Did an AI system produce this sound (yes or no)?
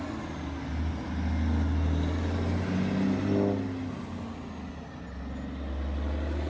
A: no